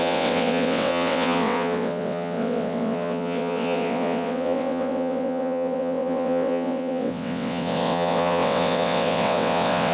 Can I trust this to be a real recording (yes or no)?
no